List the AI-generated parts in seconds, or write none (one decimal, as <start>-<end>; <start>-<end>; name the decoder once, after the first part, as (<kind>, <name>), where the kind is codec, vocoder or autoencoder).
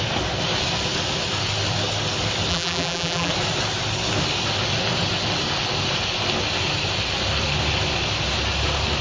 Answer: 2.5-3.3 (vocoder, BigVGAN v2)